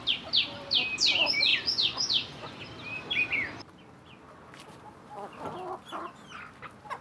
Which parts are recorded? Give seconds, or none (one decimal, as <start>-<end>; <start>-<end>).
0.0-1.5; 2.6-7.0

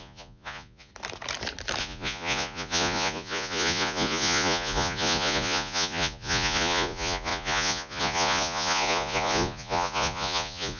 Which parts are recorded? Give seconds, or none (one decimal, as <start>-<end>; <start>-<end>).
0.9-1.8

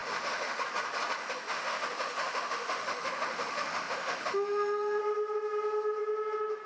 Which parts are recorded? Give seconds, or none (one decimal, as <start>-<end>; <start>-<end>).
0.6-1.2; 5.0-6.7

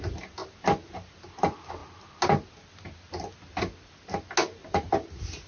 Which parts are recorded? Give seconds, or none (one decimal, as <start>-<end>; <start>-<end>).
0.0-5.5

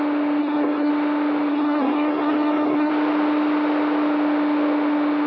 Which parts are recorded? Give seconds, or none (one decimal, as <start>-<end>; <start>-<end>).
0.0-0.4; 0.9-1.5; 2.9-5.3

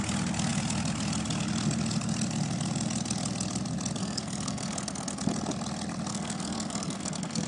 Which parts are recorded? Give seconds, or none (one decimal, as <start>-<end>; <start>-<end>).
0.0-4.0; 5.2-6.1

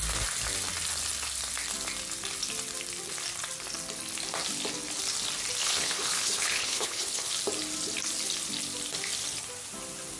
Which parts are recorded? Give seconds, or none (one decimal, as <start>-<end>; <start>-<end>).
0.0-5.6; 7.3-10.2

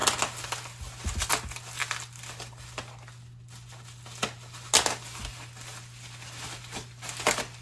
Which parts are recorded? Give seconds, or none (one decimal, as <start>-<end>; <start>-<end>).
0.0-7.6